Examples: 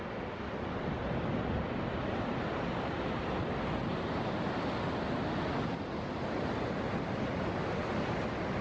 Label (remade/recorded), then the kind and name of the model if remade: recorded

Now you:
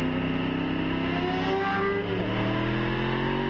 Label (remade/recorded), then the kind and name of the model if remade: recorded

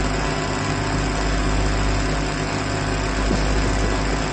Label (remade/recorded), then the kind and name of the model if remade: recorded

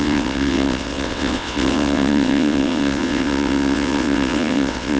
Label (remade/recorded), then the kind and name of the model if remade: remade, vocoder, WaveNeXt